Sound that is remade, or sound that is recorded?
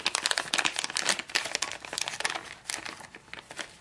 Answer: recorded